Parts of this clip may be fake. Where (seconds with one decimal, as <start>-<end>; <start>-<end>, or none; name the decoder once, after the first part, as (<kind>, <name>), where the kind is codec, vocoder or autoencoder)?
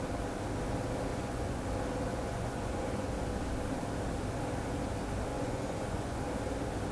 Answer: 1.1-1.6 (vocoder, Vocos); 2.1-3.1; 5.3-6.2